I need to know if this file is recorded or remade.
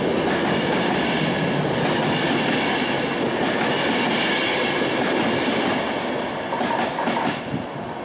recorded